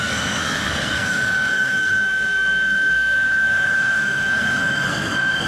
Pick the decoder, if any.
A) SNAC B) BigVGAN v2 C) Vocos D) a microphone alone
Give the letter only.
A